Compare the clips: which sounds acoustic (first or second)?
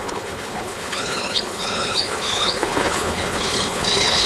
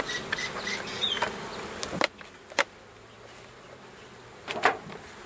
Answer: second